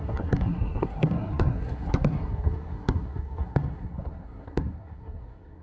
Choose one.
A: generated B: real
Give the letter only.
A